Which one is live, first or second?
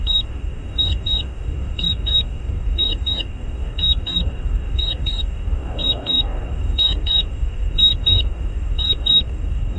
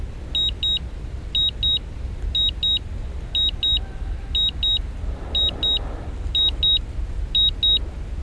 second